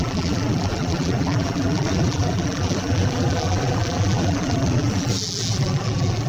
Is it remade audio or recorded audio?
remade